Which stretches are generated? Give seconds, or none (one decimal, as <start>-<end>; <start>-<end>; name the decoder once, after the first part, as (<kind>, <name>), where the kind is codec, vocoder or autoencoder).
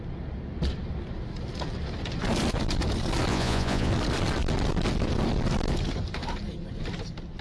3.3-3.9 (vocoder, Vocos)